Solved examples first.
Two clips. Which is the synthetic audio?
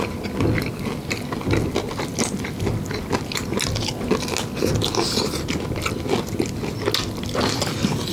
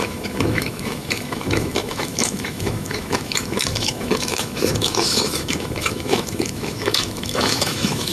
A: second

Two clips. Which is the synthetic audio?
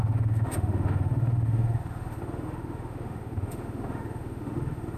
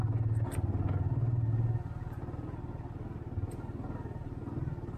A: first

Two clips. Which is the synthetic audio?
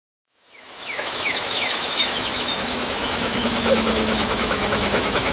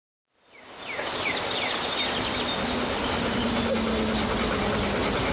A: first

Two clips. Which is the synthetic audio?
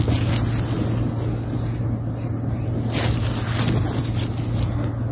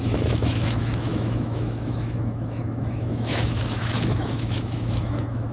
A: second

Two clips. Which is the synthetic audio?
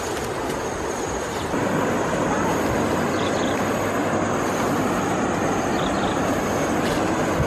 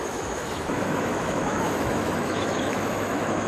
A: second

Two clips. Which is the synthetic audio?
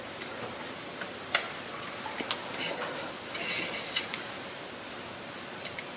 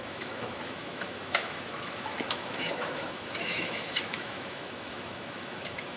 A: second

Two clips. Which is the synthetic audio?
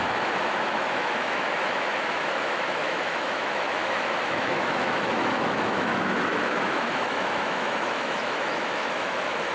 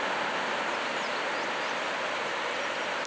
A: first